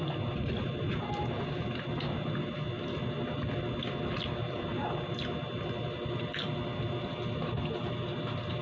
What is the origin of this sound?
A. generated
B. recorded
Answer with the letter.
B